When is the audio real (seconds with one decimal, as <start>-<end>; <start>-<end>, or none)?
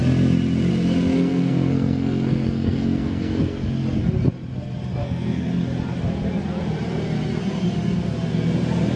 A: 0.0-1.1; 3.7-4.9; 5.5-9.0